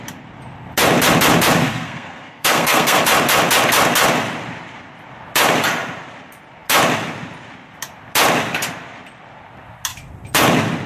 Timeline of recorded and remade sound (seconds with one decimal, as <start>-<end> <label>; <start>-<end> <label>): 0.0-1.6 recorded; 1.6-3.0 remade; 3.0-10.9 recorded